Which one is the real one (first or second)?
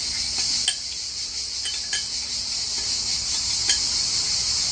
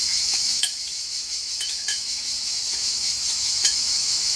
first